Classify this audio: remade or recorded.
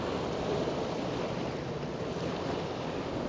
recorded